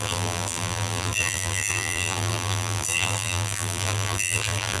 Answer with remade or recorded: remade